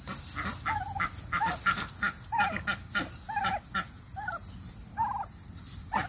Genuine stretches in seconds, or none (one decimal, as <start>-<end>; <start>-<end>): 0.0-4.4